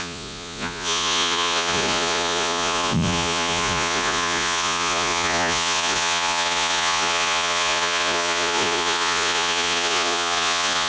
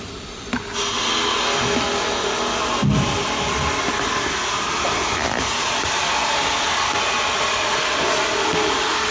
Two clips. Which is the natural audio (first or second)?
second